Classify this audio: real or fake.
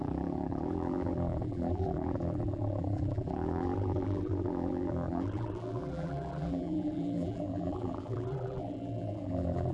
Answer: fake